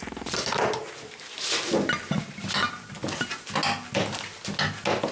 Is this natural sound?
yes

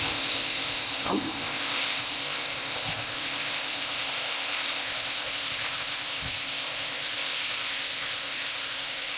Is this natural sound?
no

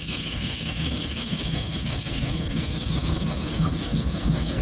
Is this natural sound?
no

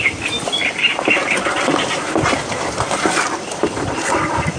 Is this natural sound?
no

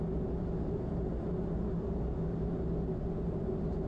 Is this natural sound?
yes